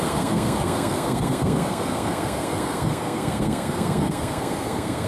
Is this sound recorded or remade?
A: remade